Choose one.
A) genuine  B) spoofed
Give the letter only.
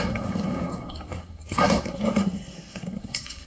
B